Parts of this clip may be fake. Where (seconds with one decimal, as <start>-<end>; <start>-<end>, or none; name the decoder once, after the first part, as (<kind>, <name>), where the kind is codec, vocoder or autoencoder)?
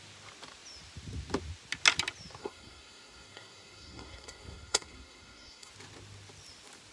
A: 2.4-5.7 (codec, SNAC)